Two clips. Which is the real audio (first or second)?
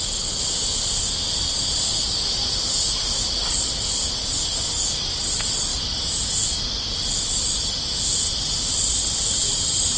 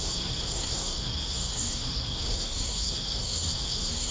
first